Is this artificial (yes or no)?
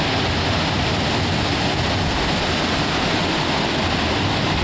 no